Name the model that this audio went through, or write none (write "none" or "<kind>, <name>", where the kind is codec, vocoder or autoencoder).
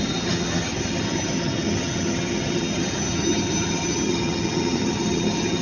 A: vocoder, HiFi-GAN